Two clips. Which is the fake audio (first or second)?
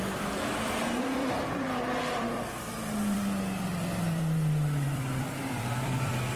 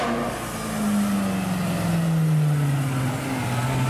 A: first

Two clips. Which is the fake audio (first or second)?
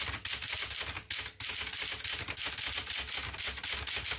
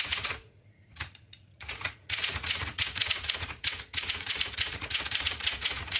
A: second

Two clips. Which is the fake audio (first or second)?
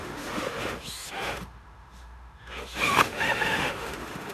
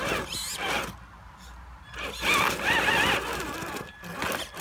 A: first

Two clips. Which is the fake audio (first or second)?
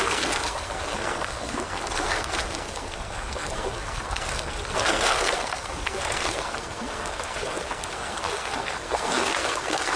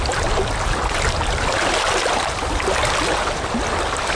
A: first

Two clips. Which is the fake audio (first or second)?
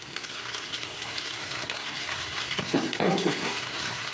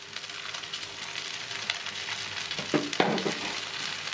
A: first